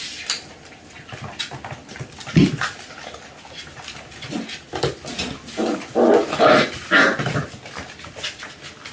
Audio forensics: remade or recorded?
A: recorded